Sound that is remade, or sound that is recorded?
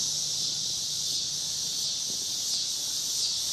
recorded